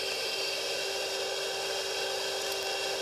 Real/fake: real